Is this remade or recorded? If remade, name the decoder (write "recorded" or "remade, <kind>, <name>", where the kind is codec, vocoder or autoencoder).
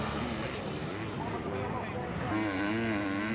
recorded